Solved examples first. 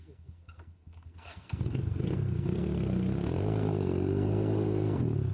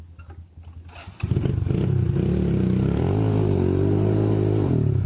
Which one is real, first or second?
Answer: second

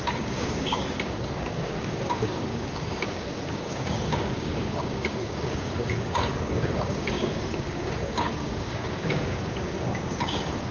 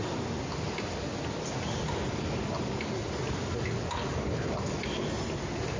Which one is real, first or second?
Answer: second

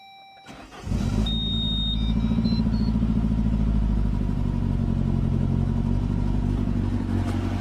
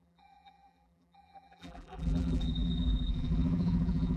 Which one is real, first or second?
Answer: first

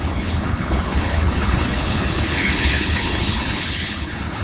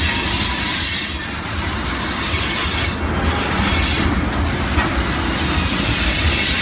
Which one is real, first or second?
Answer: second